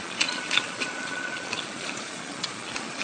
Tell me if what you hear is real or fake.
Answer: fake